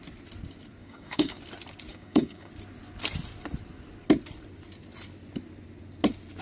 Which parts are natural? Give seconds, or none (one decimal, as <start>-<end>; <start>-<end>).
0.0-0.8; 1.4-1.9; 2.5-6.4